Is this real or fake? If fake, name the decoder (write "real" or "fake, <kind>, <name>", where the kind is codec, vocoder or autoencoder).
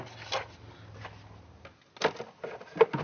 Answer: real